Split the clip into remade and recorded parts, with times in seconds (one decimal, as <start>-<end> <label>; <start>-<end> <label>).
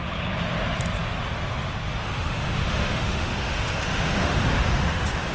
0.0-2.0 recorded; 2.0-5.3 remade